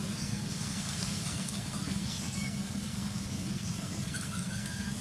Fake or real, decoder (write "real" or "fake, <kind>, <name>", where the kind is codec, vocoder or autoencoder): fake, codec, SNAC